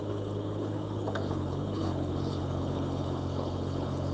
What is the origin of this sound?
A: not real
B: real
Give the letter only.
A